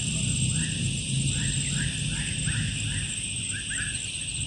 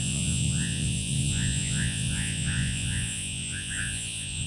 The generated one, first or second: second